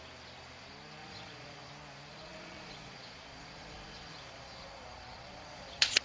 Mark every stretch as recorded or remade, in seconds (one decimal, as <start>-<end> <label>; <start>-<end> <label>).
0.0-1.0 recorded; 1.0-1.7 remade; 1.7-2.1 recorded; 2.1-6.0 remade